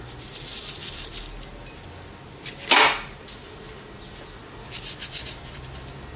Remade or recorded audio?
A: recorded